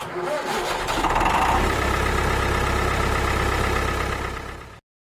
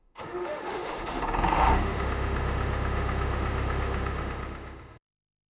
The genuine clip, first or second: first